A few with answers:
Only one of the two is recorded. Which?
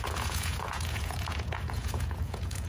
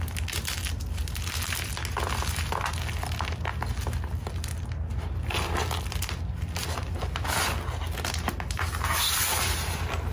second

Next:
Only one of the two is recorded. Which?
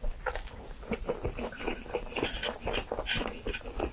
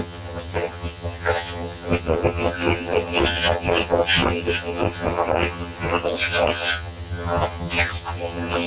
first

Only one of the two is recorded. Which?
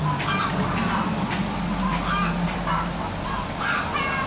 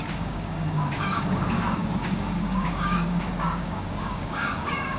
first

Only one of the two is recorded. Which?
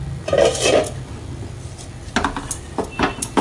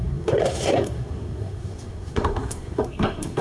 first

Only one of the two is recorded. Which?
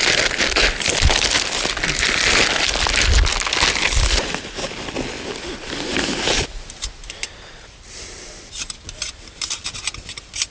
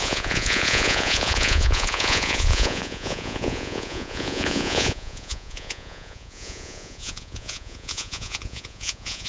first